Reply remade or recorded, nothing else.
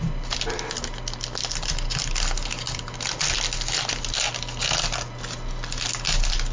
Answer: recorded